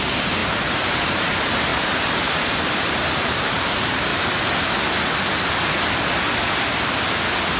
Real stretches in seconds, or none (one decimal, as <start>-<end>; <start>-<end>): 4.1-7.6